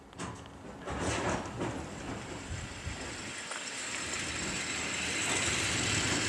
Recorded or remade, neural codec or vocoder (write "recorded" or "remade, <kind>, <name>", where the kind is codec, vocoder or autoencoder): recorded